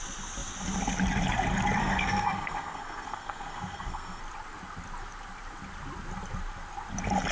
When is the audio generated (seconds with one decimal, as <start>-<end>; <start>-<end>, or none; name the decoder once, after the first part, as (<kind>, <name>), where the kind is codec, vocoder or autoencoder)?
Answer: 1.8-4.2 (codec, SNAC)